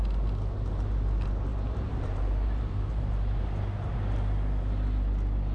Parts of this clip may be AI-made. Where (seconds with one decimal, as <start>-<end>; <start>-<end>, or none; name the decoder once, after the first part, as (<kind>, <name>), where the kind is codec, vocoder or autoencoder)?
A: 1.5-3.0 (vocoder, BigVGAN v2)